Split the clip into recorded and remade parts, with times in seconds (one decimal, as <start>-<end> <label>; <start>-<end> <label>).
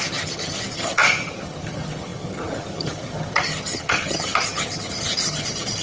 0.0-5.8 remade